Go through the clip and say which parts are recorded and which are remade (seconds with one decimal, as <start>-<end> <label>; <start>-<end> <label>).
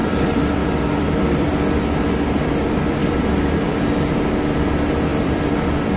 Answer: 0.0-0.8 remade; 0.8-3.0 recorded; 3.0-3.9 remade; 3.9-5.1 recorded; 5.1-6.0 remade